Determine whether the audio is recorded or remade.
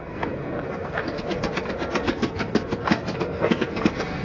remade